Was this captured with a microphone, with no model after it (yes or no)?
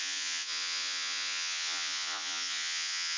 no